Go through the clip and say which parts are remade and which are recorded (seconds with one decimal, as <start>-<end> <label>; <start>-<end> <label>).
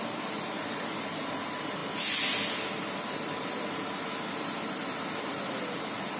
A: 0.0-6.2 recorded